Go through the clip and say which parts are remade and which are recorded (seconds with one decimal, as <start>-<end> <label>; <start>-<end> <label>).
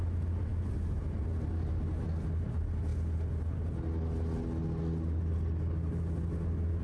0.0-6.8 recorded